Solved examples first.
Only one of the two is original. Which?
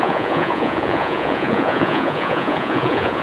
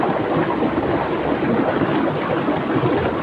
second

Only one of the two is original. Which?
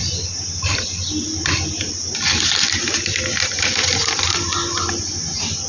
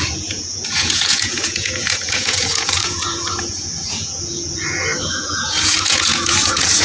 first